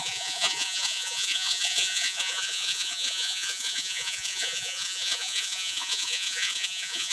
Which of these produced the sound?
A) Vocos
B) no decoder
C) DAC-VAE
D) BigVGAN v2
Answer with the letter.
A